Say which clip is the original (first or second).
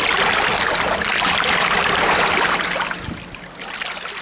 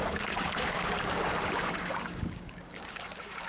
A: first